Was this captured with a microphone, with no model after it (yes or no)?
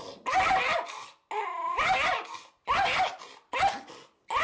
yes